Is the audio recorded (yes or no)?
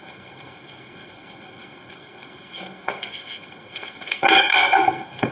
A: no